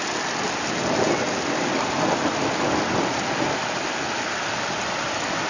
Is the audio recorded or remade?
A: recorded